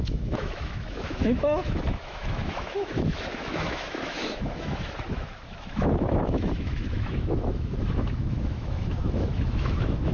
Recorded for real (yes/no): no